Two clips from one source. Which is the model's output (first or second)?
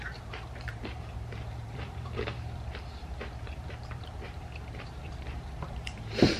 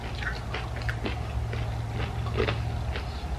first